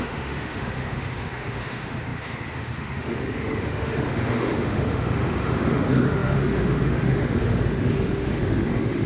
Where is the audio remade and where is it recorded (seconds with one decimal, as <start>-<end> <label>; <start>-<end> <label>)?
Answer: 0.0-9.1 remade